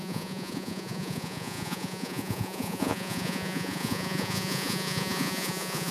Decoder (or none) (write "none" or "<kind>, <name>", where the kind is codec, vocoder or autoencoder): vocoder, Vocos